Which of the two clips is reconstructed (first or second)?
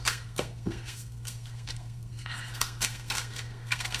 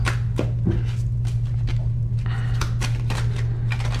first